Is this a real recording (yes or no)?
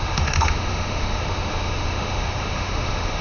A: no